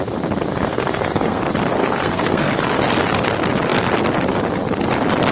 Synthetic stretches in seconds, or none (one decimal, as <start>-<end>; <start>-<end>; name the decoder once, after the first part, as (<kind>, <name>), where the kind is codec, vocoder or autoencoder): 0.5-1.4 (codec, SNAC); 1.8-2.5